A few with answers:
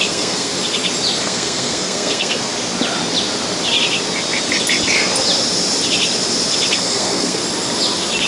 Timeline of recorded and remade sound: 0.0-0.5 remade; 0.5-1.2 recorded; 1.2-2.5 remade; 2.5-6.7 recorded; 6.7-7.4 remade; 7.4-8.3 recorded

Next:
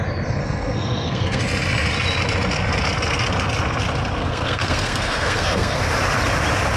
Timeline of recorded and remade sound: 0.0-0.4 recorded; 0.4-1.4 remade; 1.4-4.2 recorded; 4.2-5.8 remade; 5.8-6.8 recorded

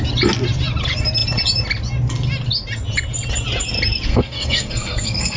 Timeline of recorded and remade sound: 0.0-4.1 recorded; 4.1-5.4 remade

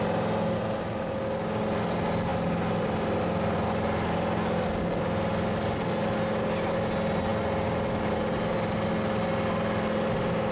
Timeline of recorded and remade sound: 0.0-10.5 recorded

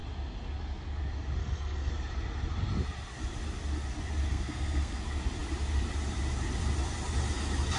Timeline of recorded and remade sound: 0.0-1.4 recorded; 1.4-1.9 remade; 1.9-4.3 recorded; 4.3-5.0 remade; 5.0-7.8 recorded

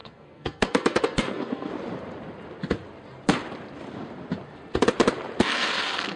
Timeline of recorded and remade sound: 0.0-1.7 remade; 1.7-5.4 recorded; 5.4-6.2 remade